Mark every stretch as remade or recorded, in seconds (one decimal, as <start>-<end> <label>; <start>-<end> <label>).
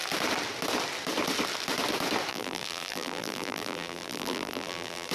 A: 0.0-2.3 recorded; 2.3-5.1 remade